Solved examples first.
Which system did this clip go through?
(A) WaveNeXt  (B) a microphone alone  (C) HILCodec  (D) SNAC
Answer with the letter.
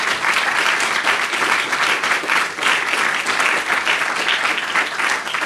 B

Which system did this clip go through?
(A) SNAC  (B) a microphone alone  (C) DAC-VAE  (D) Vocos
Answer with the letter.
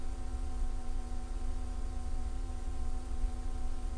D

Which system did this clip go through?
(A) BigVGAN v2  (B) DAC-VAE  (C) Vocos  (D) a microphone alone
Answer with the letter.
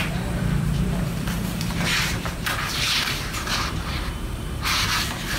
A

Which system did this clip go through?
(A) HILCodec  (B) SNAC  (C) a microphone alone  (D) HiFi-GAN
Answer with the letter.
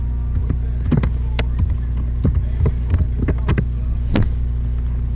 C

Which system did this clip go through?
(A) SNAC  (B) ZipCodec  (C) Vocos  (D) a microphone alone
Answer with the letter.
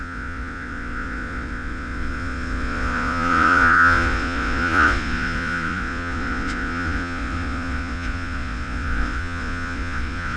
C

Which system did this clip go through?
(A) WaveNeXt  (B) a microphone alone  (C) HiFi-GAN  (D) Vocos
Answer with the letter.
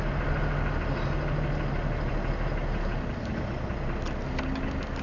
B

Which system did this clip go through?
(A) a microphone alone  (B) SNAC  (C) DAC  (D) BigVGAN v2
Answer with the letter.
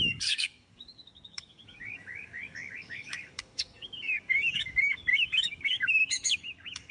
C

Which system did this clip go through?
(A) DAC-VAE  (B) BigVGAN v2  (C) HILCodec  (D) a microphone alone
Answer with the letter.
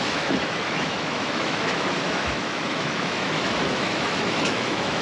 A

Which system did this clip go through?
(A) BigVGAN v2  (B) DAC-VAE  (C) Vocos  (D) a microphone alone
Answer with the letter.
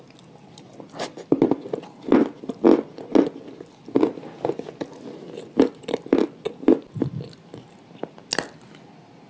D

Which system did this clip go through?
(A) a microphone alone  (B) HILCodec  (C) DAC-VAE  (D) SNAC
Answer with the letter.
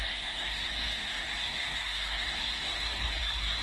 D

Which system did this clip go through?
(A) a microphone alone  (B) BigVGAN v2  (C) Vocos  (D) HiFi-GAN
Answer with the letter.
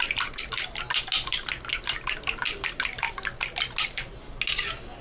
A